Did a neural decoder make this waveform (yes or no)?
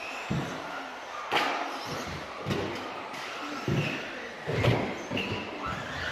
no